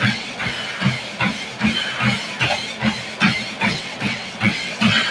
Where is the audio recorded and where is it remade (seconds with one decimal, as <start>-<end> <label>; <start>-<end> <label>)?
0.0-0.5 remade; 0.5-3.6 recorded; 3.6-5.1 remade